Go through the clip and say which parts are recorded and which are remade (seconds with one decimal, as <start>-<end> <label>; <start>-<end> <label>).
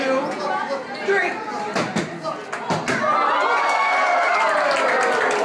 0.0-3.6 recorded; 3.6-4.4 remade; 4.4-5.4 recorded